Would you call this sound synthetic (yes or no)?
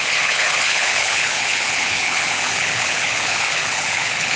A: yes